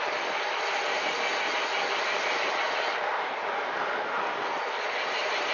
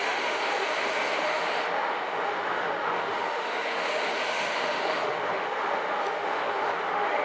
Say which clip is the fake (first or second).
second